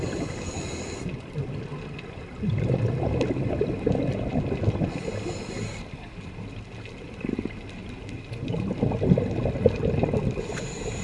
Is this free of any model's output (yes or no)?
yes